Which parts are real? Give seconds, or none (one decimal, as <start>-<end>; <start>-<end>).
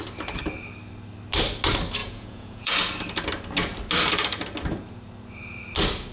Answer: 0.0-2.0; 2.7-6.1